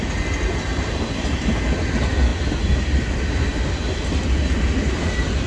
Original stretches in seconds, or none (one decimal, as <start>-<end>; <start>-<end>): 0.0-5.5